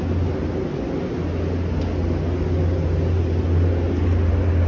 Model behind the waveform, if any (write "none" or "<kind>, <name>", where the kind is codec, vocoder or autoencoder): none